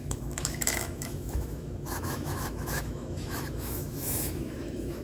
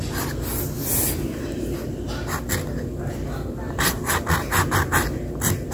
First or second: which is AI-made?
first